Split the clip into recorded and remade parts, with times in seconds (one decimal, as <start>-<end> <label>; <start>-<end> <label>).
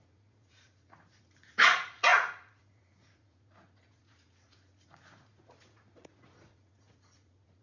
0.0-7.6 remade